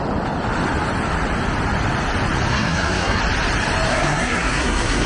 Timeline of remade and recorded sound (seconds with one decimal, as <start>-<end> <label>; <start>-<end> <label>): 0.0-2.5 recorded; 2.5-3.2 remade; 3.2-3.9 recorded; 3.9-5.1 remade